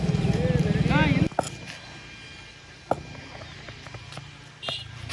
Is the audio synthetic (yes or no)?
no